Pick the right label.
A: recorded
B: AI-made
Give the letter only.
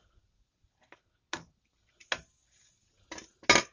A